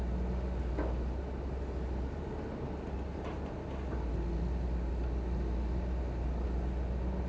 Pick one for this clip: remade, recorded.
recorded